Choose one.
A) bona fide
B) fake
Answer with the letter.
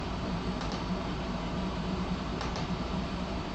B